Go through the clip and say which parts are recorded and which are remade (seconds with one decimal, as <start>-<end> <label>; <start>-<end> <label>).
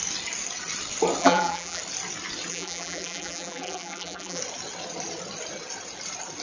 0.0-1.2 recorded; 1.2-1.8 remade; 1.8-2.5 recorded; 2.5-4.4 remade; 4.4-6.4 recorded